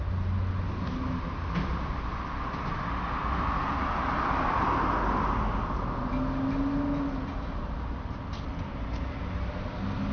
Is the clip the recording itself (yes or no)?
yes